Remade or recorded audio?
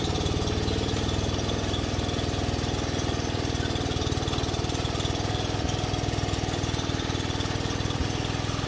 recorded